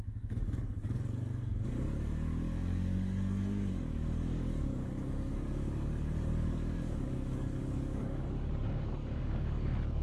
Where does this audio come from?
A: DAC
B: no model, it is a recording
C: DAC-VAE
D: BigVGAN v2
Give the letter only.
A